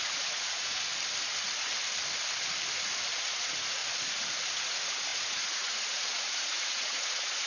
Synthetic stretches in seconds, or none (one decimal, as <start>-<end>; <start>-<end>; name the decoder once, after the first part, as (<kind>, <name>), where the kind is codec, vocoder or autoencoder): 0.0-0.9 (vocoder, Vocos); 3.2-3.8; 4.5-7.5